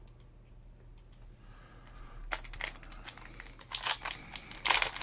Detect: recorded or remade recorded